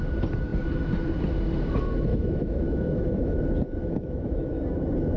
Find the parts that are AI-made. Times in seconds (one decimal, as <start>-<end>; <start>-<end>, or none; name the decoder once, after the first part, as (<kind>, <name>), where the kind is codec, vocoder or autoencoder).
2.1-3.4 (autoencoder, DAC-VAE); 3.8-4.5

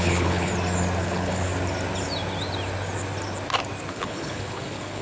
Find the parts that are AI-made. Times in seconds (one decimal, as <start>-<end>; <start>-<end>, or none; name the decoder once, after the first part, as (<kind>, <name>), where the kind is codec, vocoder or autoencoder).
0.0-0.5 (codec, HILCodec); 1.0-1.5; 3.9-5.0

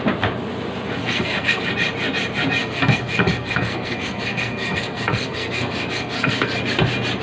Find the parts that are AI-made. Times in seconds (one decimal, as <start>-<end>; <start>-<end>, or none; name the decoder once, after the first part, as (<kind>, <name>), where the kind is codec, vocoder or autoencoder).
1.0-1.6 (codec, SNAC); 2.6-6.5